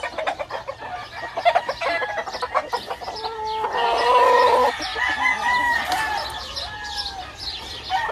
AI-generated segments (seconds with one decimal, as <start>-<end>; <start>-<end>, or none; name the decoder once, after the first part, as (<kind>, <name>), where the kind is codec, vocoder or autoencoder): none